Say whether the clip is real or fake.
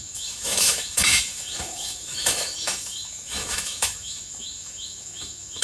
fake